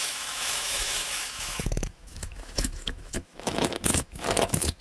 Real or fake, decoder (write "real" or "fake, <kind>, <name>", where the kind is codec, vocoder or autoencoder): fake, autoencoder, DAC-VAE